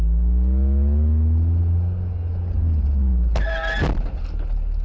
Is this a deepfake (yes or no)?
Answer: no